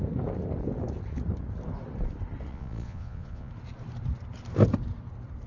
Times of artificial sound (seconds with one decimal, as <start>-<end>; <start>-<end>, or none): 2.5-3.5